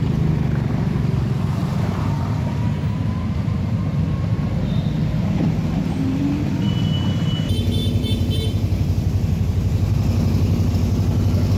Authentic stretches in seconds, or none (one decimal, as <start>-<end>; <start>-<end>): 0.0-1.6; 3.8-7.8; 10.7-11.6